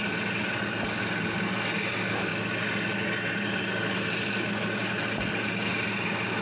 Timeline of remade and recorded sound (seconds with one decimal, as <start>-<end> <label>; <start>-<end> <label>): 0.0-6.4 recorded